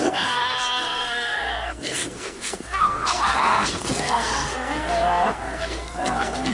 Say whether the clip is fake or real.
fake